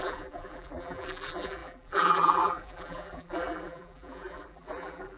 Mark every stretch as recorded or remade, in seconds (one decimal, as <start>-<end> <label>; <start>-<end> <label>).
0.0-5.2 remade